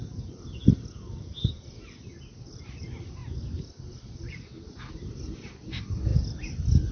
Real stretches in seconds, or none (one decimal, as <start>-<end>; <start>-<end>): 2.8-6.1